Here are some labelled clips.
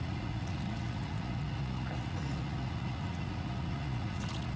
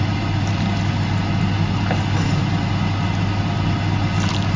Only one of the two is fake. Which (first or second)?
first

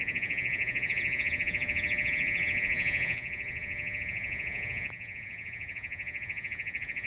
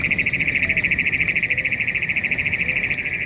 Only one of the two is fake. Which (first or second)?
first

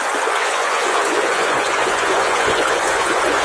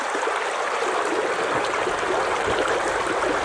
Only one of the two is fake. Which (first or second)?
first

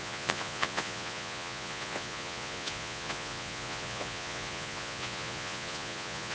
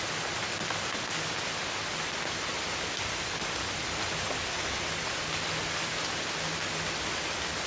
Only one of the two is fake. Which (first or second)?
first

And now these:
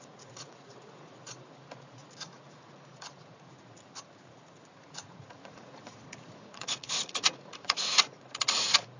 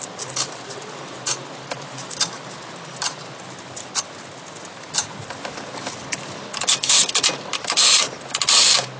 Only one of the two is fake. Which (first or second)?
first